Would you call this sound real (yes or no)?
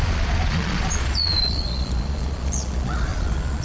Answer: no